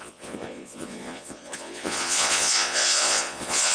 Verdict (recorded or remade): remade